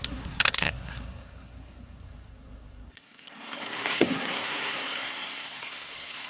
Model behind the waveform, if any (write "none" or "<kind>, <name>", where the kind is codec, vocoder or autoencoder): codec, SNAC